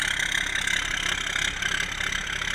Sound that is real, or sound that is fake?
real